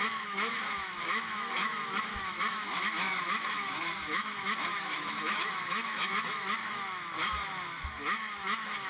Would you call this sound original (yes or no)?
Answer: no